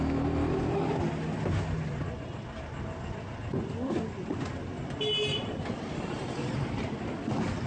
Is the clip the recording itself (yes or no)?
yes